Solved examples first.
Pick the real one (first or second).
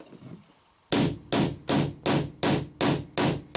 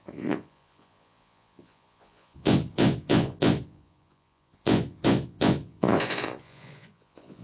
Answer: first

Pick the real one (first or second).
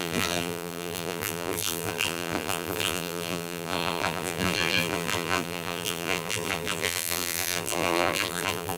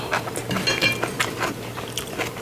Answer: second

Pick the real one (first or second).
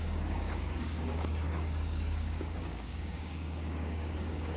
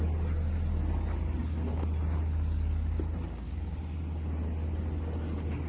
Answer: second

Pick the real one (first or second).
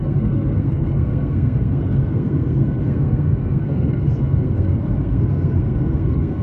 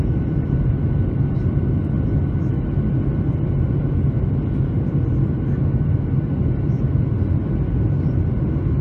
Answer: second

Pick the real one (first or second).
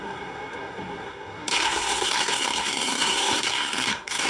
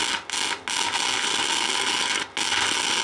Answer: second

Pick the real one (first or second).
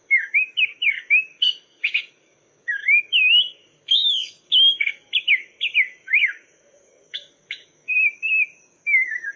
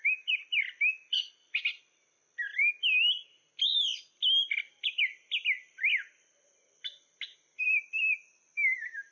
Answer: second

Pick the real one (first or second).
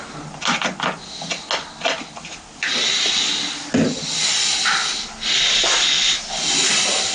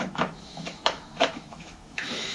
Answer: first